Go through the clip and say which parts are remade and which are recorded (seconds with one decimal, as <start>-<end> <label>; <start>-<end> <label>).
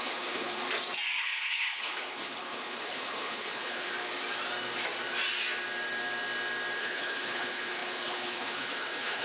0.0-0.6 remade; 0.6-1.2 recorded; 1.2-3.9 remade; 3.9-6.8 recorded; 6.8-9.2 remade